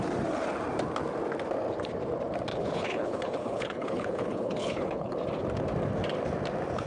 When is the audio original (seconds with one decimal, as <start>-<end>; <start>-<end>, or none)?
0.0-2.5; 5.1-6.9